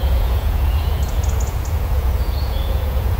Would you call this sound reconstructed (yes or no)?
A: yes